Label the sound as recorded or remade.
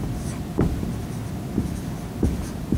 recorded